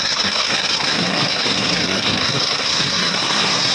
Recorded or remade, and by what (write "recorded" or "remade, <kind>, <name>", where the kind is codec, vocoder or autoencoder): remade, codec, SNAC